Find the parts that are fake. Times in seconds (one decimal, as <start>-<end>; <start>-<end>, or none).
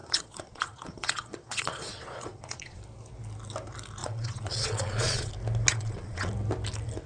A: 0.0-2.8; 4.0-5.3; 5.7-6.3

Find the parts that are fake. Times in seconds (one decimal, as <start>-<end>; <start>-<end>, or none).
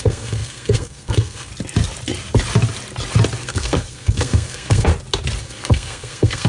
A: 0.0-1.5; 3.4-4.9; 5.4-6.5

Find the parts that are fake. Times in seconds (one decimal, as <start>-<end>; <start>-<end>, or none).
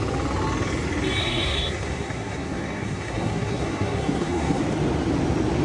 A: 1.2-4.6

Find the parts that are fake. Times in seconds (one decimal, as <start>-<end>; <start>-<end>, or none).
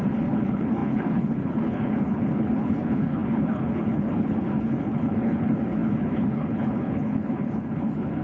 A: 0.0-8.2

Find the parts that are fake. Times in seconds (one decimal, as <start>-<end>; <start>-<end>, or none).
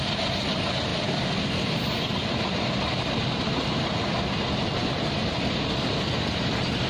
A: none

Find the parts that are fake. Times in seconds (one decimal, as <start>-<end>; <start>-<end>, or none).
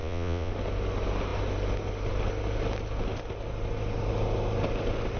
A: 0.0-0.5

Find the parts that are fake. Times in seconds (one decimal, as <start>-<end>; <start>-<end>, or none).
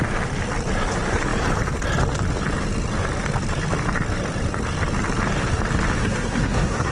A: 6.0-6.9